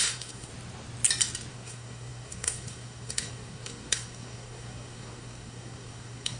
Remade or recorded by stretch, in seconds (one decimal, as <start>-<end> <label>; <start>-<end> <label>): 0.0-0.5 remade; 0.5-1.5 recorded; 1.5-6.4 remade